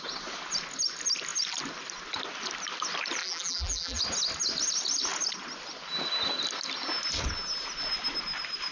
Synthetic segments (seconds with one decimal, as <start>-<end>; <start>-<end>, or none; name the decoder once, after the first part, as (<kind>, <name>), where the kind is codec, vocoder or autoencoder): 3.2-4.0 (vocoder, BigVGAN v2)